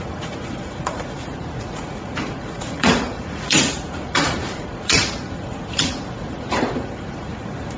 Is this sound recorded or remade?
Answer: remade